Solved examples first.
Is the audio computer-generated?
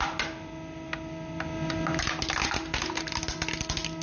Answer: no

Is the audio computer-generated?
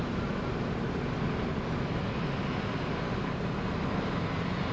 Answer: no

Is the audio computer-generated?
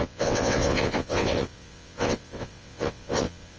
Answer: yes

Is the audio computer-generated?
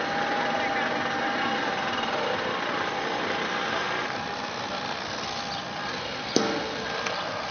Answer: no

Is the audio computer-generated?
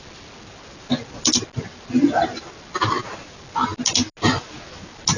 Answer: no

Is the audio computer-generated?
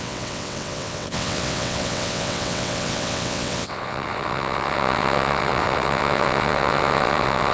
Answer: yes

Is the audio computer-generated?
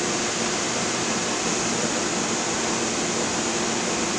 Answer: no